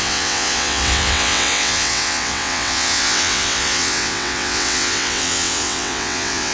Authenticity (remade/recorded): remade